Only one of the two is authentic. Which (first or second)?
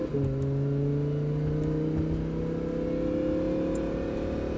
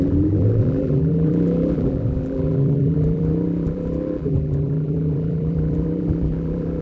first